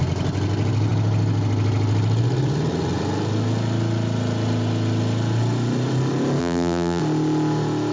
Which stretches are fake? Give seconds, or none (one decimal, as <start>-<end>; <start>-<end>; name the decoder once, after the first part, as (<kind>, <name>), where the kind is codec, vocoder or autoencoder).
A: 6.4-7.0 (vocoder, BigVGAN v2)